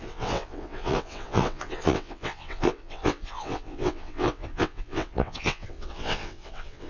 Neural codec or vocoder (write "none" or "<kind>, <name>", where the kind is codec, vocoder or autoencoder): vocoder, WaveNeXt